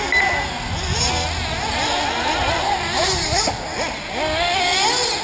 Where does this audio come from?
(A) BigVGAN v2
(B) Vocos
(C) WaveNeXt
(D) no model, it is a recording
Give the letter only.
D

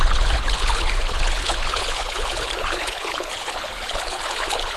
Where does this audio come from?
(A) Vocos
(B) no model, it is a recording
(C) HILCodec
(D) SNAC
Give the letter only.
C